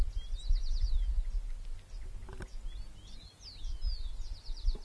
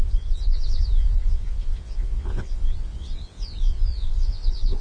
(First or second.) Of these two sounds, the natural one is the first